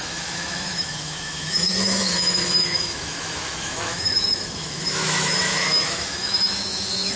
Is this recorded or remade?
remade